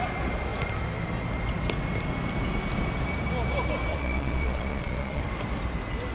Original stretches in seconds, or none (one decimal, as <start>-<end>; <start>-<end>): 0.0-3.9; 5.2-6.1